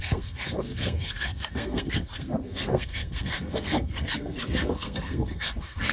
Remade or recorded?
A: remade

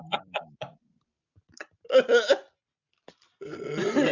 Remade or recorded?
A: recorded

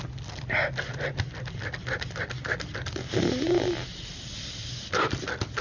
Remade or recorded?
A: recorded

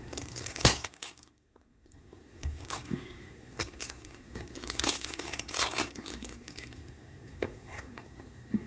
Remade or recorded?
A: remade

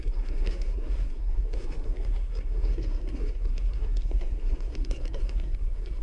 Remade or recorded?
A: remade